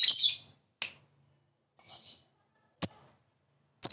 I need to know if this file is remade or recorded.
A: recorded